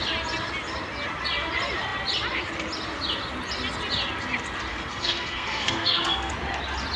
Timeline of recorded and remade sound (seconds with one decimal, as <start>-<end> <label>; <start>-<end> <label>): 0.0-4.7 recorded; 4.7-6.3 remade; 6.3-7.0 recorded